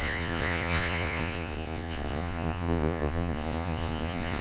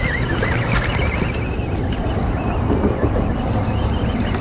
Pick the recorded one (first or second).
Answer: second